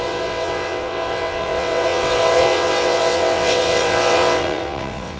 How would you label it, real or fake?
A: fake